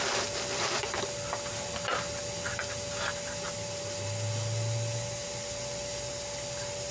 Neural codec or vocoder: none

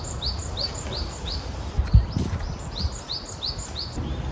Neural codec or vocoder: none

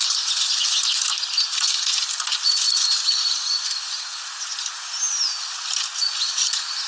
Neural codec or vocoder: none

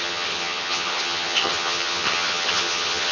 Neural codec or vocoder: vocoder, HiFi-GAN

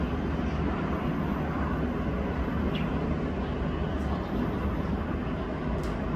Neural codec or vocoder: none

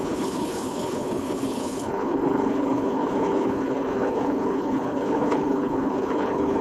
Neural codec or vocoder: codec, HILCodec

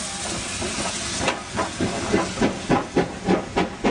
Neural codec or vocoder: none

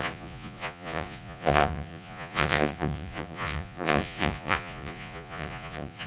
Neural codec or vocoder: vocoder, Vocos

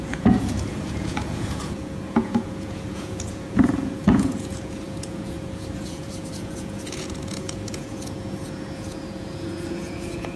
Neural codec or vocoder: vocoder, Vocos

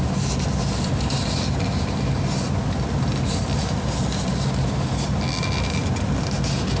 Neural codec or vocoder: none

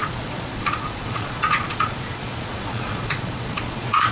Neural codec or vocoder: vocoder, Vocos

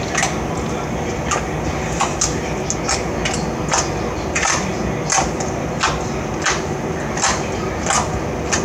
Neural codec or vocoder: none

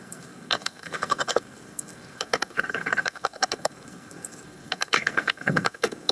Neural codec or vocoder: codec, SNAC